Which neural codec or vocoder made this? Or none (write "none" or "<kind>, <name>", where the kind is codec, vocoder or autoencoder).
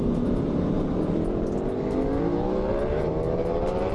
vocoder, BigVGAN v2